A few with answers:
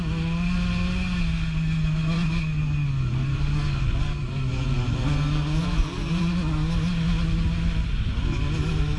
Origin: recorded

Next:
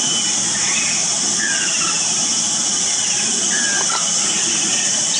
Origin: recorded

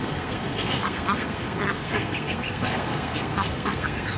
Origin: remade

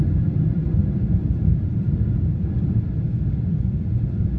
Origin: recorded